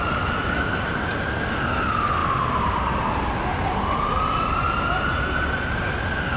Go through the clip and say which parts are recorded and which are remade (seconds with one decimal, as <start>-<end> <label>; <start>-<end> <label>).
0.0-6.4 recorded

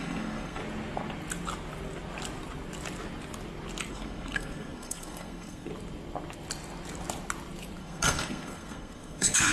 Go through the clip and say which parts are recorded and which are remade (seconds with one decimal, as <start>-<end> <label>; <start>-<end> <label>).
0.0-0.6 remade; 0.6-3.9 recorded; 3.9-5.7 remade; 5.7-7.8 recorded; 7.8-9.5 remade

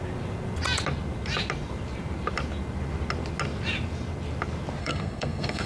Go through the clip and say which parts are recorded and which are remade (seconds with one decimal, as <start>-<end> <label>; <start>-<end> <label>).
0.0-4.8 recorded; 4.8-5.7 remade

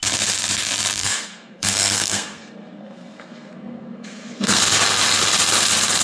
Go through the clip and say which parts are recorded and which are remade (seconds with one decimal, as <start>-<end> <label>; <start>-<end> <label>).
0.0-1.0 recorded; 1.0-4.6 remade; 4.6-6.0 recorded

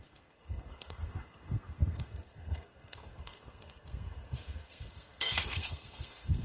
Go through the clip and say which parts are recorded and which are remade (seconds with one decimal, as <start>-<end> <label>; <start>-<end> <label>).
0.0-6.4 remade

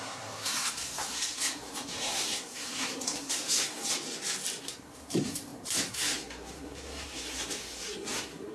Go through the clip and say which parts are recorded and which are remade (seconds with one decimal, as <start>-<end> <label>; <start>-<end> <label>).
0.0-3.8 remade; 3.8-4.6 recorded; 4.6-8.5 remade

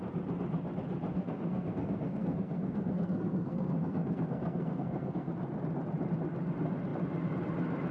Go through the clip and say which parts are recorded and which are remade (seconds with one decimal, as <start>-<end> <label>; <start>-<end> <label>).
0.0-1.1 recorded; 1.1-5.3 remade; 5.3-7.9 recorded

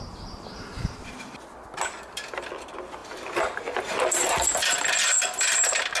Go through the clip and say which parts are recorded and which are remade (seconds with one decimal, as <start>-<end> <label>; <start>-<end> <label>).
0.0-6.0 recorded